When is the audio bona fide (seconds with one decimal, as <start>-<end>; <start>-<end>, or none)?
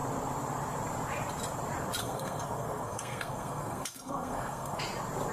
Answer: 0.0-2.0; 4.8-5.3